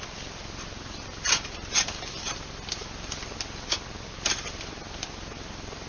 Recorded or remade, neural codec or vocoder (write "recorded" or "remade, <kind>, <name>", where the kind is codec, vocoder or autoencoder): recorded